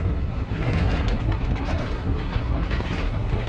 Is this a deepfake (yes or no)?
yes